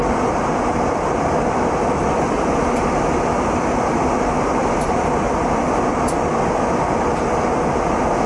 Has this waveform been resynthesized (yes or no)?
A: yes